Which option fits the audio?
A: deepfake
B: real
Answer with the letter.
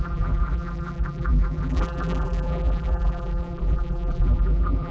A